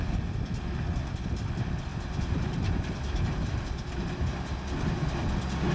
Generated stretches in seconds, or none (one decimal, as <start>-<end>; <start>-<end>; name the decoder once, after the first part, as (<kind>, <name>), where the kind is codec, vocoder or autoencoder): 1.9-4.2 (vocoder, BigVGAN v2)